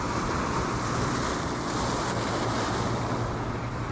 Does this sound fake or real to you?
real